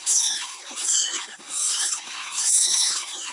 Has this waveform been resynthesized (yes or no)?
yes